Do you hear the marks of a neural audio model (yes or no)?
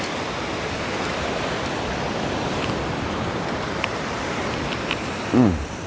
yes